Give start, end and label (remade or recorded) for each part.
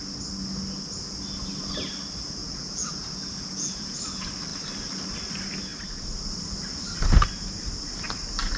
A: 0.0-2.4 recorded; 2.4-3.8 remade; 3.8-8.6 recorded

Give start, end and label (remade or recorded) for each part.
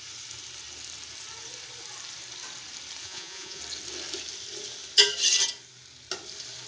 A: 0.0-3.0 recorded; 3.0-3.6 remade; 3.6-6.7 recorded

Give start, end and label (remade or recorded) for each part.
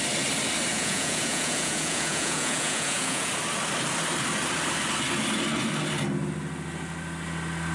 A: 0.0-0.7 recorded; 0.7-3.3 remade; 3.3-7.7 recorded